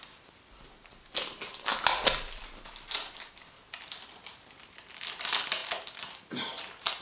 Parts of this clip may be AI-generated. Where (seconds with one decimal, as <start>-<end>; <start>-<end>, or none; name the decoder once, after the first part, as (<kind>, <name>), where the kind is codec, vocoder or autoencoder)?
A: none